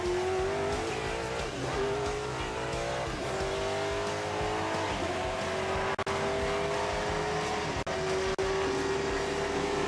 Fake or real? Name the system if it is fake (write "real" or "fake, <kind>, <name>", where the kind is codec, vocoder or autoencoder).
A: real